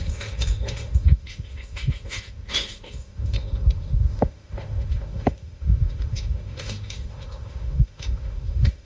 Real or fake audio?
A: fake